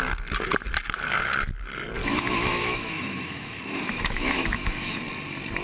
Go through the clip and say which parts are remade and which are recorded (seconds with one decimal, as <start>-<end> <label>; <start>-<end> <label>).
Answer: 0.0-2.0 recorded; 2.0-5.0 remade; 5.0-5.6 recorded